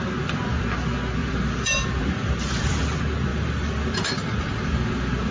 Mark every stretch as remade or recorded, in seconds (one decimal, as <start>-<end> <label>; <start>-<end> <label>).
0.0-1.2 recorded; 1.2-2.8 remade; 2.8-3.3 recorded; 3.3-5.3 remade

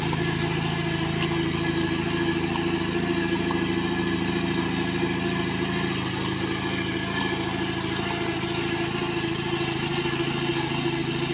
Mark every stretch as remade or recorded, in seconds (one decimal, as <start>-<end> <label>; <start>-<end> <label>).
0.0-11.3 recorded